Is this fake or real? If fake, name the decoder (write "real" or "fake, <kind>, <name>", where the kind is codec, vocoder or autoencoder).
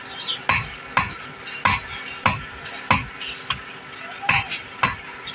real